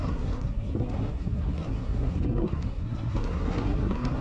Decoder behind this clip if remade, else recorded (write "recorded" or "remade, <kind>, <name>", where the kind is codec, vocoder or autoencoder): remade, codec, SNAC